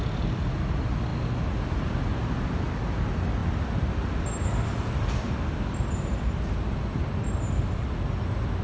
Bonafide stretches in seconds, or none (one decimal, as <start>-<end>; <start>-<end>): 0.0-8.6